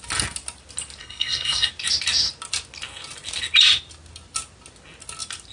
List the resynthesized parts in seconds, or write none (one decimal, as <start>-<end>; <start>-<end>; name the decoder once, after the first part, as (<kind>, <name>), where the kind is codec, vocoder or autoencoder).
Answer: 1.0-1.7 (codec, SNAC)

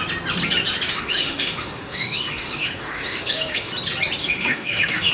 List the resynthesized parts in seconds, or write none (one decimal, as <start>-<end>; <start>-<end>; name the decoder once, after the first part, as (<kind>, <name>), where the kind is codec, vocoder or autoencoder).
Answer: 0.9-3.7 (autoencoder, DAC-VAE); 4.2-5.1

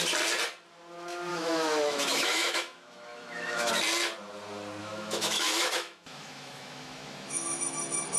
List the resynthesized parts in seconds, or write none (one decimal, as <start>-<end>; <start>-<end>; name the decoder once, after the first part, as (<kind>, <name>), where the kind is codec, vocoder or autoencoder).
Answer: 1.3-3.7 (autoencoder, DAC-VAE); 4.8-7.6

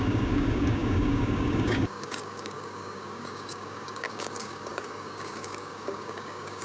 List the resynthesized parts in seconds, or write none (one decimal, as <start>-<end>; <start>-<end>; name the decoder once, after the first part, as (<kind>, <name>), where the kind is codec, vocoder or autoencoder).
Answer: 0.0-6.6 (codec, DAC)

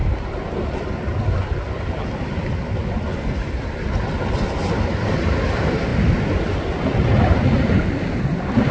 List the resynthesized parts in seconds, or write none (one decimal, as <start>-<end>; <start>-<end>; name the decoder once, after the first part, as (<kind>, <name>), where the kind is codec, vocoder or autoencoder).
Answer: none

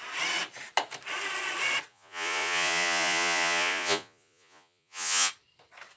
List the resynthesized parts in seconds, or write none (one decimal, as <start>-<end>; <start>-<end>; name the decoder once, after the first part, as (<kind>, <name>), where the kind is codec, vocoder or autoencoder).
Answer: 1.9-5.3 (vocoder, Vocos)

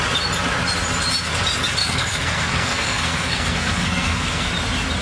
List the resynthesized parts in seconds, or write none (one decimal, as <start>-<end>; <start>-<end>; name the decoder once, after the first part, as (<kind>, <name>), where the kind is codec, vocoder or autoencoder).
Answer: 1.8-4.5 (codec, SNAC)